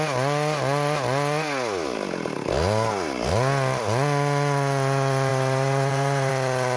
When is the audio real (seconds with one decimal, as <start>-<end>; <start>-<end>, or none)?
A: 0.0-5.3; 6.3-6.8